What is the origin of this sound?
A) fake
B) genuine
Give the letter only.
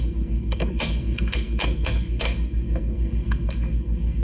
A